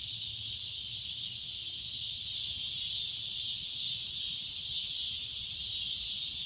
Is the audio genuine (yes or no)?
yes